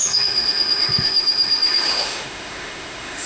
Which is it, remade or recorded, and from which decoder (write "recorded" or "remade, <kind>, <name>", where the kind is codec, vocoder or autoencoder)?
remade, autoencoder, DAC-VAE